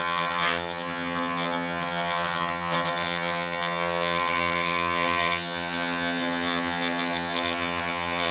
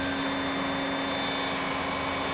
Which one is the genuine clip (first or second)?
second